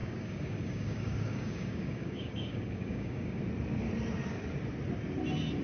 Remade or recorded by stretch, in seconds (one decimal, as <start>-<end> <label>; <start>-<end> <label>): 0.0-3.4 remade; 3.4-5.6 recorded